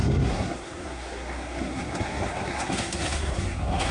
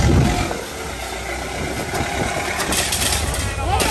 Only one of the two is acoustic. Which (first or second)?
second